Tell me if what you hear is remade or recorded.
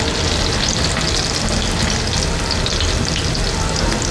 recorded